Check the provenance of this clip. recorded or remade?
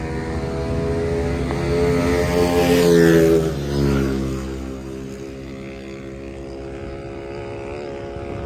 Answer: recorded